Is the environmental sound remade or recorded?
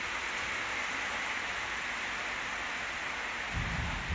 recorded